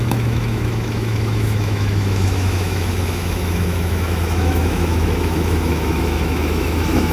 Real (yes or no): no